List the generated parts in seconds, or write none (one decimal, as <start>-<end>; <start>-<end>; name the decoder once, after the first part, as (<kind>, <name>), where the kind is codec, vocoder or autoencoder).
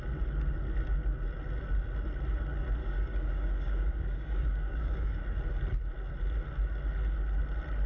2.8-5.2 (codec, DAC)